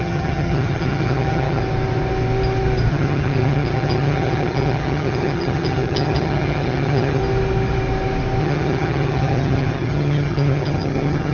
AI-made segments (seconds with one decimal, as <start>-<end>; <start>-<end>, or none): 0.0-1.6; 2.9-7.2; 8.4-11.3